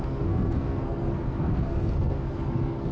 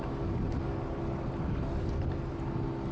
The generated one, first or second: first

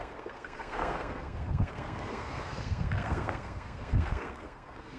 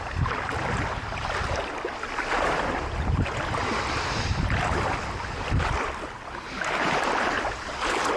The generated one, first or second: first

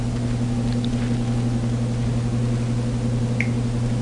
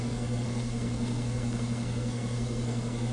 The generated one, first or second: second